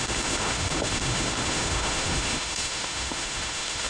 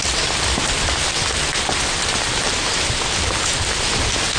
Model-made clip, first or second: first